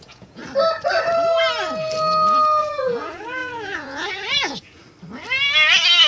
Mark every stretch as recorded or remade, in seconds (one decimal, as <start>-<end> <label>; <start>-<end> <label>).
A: 0.0-0.4 remade; 0.4-2.6 recorded; 2.6-4.8 remade; 4.8-6.1 recorded